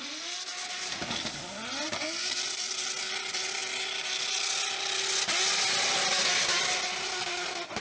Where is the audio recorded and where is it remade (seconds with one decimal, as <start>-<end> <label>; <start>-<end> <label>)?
0.0-7.8 recorded